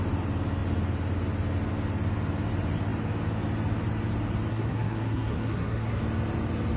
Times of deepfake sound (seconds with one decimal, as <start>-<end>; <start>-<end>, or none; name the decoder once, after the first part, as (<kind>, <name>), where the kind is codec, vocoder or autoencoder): 4.5-6.0 (codec, SNAC)